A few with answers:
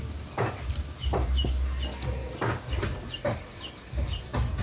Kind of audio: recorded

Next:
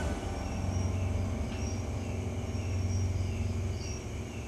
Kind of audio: recorded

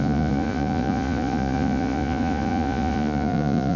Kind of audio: remade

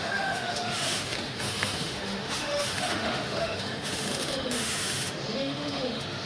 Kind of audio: remade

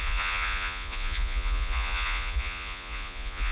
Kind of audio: remade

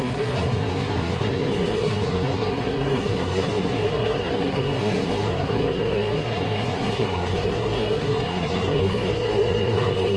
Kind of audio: remade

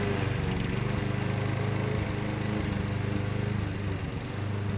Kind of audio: recorded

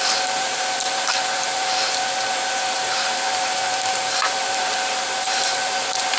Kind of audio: remade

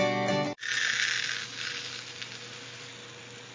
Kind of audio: recorded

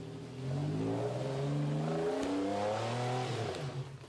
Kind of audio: recorded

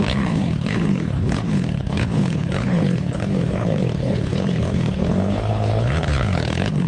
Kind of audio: remade